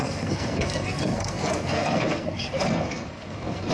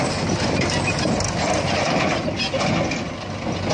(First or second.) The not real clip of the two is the first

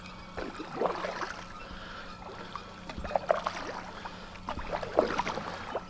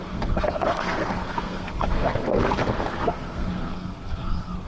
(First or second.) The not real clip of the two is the second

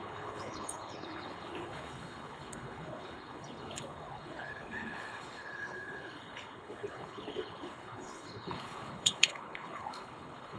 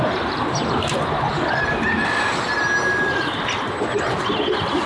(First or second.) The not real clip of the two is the first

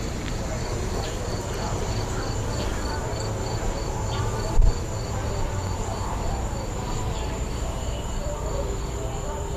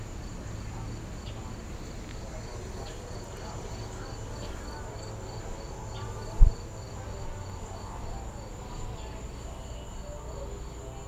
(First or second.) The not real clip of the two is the first